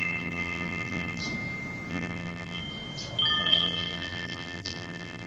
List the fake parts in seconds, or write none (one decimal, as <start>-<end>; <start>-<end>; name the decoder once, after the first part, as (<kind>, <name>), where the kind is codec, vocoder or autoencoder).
0.0-1.2 (vocoder, BigVGAN v2); 1.9-2.6; 3.4-5.3